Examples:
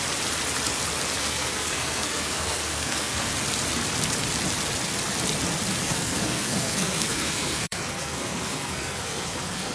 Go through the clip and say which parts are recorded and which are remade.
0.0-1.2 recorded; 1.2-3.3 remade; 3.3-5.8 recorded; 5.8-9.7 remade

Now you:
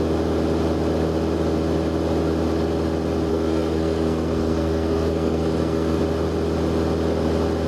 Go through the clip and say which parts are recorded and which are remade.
0.0-3.3 recorded; 3.3-6.0 remade; 6.0-7.7 recorded